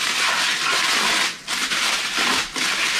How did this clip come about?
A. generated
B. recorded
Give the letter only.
B